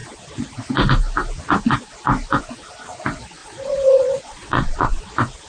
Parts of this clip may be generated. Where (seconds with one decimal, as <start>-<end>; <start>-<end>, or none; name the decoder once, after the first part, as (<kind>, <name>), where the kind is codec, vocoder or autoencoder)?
3.4-5.0 (vocoder, Vocos)